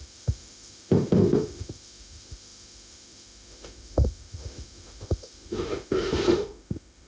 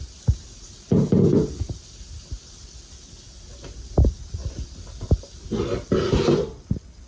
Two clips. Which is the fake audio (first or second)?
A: first